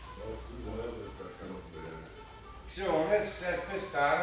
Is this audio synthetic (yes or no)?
no